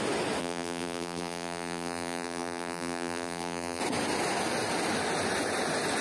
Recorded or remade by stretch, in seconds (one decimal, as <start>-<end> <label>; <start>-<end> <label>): 0.0-0.4 recorded; 0.4-3.8 remade; 3.8-6.0 recorded